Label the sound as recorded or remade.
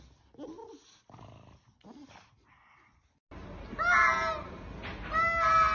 recorded